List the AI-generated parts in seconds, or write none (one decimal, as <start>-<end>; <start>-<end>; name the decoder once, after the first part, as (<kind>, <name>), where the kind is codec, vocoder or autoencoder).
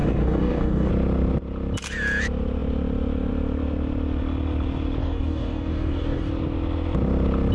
0.0-0.9 (codec, DAC); 5.0-6.3